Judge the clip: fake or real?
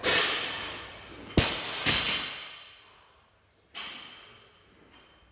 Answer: real